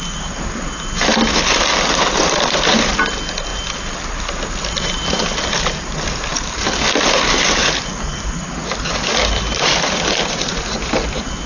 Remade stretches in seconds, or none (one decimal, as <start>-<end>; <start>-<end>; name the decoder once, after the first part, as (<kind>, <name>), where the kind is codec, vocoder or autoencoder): 3.5-5.6 (vocoder, BigVGAN v2); 6.3-9.6